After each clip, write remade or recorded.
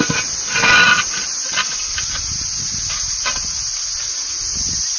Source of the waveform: recorded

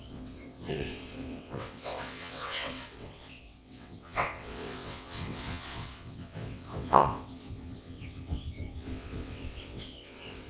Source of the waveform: remade